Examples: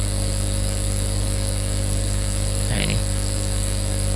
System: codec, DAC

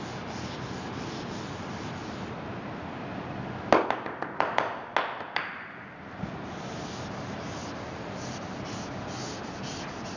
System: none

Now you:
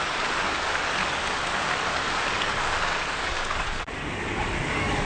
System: codec, DAC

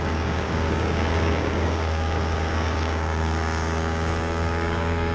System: codec, DAC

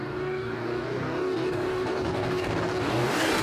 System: codec, DAC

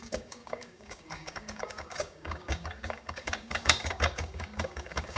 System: codec, DAC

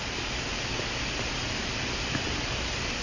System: none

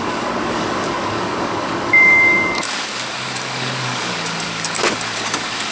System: codec, DAC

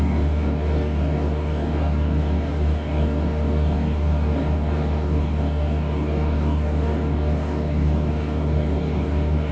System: codec, DAC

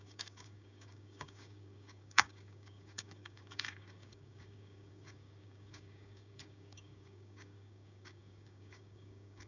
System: codec, DAC